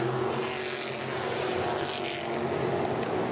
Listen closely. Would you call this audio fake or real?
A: real